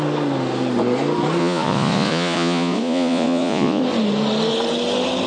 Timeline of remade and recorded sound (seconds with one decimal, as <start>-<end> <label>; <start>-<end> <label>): 0.0-1.4 recorded; 1.4-3.8 remade; 3.8-5.3 recorded